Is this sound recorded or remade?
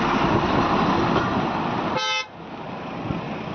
recorded